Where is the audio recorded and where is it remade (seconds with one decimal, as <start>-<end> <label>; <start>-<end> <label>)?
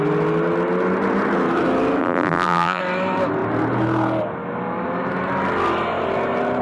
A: 0.0-2.0 recorded; 2.0-2.8 remade; 2.8-6.6 recorded